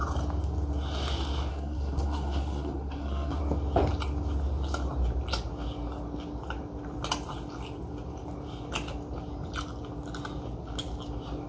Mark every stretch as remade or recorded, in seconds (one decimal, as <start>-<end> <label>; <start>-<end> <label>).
0.0-1.5 recorded; 1.5-3.4 remade; 3.4-11.5 recorded